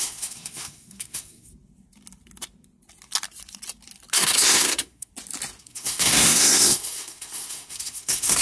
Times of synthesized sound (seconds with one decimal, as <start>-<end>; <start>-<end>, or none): 0.0-1.5; 4.1-5.1; 5.6-8.4